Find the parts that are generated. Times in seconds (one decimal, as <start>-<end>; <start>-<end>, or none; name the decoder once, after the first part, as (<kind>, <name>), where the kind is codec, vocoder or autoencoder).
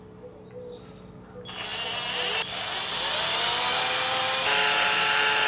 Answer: none